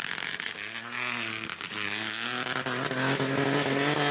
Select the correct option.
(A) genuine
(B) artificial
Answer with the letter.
A